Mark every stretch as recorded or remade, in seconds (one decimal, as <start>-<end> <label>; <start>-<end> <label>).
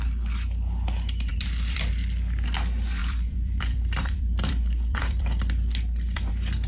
0.0-1.3 recorded; 1.3-1.9 remade; 1.9-3.0 recorded; 3.0-6.3 remade; 6.3-6.7 recorded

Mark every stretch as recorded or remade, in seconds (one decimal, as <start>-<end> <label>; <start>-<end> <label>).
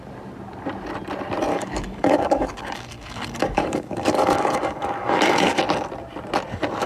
0.0-1.5 recorded; 1.5-5.6 remade; 5.6-6.9 recorded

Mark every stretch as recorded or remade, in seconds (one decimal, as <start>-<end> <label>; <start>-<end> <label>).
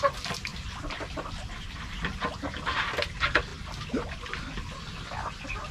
0.0-5.7 recorded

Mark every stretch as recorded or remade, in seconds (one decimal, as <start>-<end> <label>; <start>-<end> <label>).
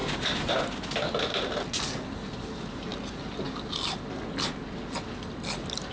0.0-0.5 remade; 0.5-5.9 recorded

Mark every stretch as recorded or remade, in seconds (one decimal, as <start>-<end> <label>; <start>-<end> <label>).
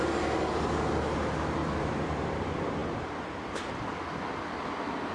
0.0-1.6 recorded; 1.6-2.4 remade; 2.4-5.1 recorded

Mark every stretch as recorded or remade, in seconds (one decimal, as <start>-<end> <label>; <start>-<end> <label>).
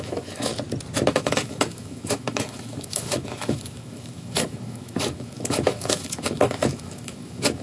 0.0-0.5 remade; 0.5-1.1 recorded; 1.1-7.6 remade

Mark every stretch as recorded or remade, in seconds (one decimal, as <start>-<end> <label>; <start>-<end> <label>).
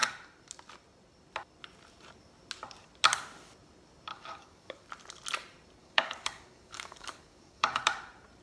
0.0-4.1 recorded; 4.1-4.9 remade; 4.9-5.8 recorded; 5.8-7.8 remade; 7.8-8.4 recorded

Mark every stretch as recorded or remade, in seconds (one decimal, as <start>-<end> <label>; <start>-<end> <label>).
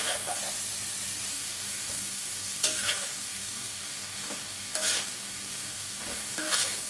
0.0-0.4 remade; 0.4-1.3 recorded; 1.3-6.9 remade